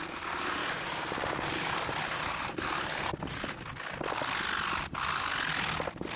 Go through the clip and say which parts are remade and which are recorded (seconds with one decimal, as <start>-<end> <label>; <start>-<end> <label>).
0.0-6.2 recorded

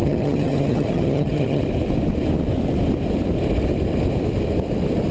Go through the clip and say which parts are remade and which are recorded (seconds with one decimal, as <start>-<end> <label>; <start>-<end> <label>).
0.0-1.6 remade; 1.6-5.1 recorded

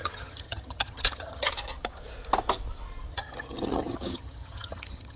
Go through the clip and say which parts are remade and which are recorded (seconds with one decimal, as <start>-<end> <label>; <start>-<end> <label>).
0.0-1.5 remade; 1.5-3.1 recorded; 3.1-5.2 remade

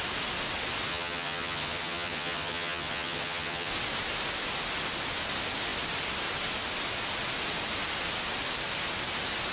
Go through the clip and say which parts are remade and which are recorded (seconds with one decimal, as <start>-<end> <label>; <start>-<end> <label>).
0.0-0.9 recorded; 0.9-3.7 remade; 3.7-9.5 recorded

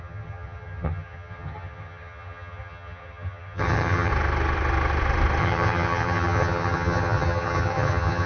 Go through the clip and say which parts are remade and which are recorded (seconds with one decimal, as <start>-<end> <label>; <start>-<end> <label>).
0.0-4.1 remade; 4.1-5.4 recorded; 5.4-8.3 remade